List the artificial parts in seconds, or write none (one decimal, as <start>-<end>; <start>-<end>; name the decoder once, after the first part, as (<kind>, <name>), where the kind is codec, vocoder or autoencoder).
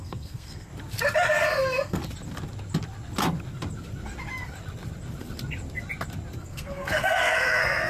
0.0-0.7 (codec, SNAC); 1.3-2.0; 6.4-7.9